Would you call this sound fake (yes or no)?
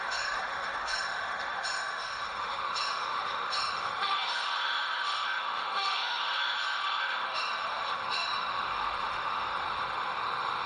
yes